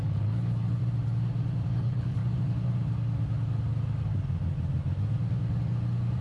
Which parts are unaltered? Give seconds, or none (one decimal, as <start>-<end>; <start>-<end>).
0.8-1.7; 2.2-6.2